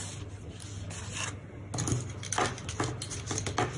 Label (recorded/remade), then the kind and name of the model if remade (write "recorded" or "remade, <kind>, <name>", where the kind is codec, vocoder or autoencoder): recorded